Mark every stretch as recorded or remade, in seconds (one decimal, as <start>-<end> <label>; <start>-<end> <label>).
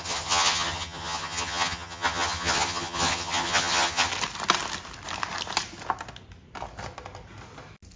0.0-4.1 remade; 4.1-8.0 recorded